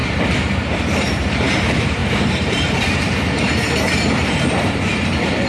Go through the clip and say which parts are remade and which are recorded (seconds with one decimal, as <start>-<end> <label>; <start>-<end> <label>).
0.0-5.5 remade